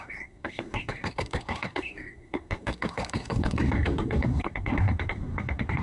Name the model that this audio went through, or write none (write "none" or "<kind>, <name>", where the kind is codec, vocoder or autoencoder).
codec, SNAC